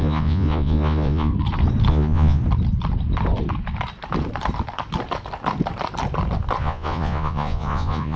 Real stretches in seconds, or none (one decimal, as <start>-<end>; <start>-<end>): 1.3-1.9; 2.4-6.6